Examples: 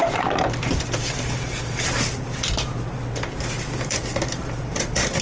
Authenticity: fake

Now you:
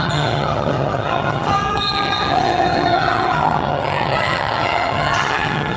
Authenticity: fake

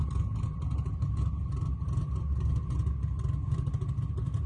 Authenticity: real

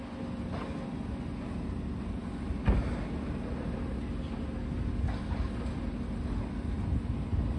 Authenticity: real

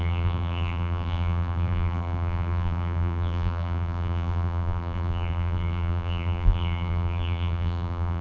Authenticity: fake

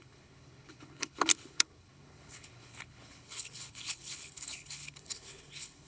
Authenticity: fake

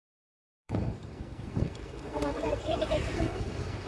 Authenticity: fake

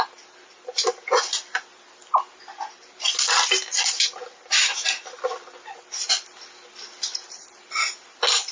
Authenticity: real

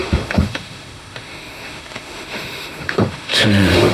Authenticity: fake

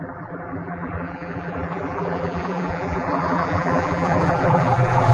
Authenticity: fake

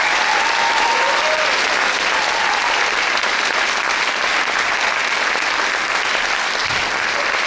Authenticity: real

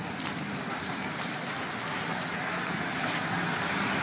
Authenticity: real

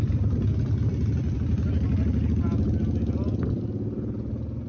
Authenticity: real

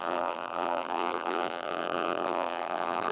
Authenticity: fake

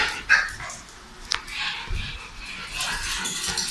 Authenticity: real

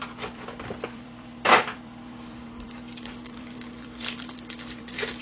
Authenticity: fake